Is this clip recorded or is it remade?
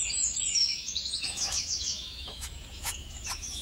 remade